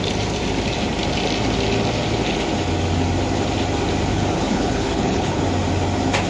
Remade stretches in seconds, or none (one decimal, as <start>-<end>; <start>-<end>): 4.1-5.4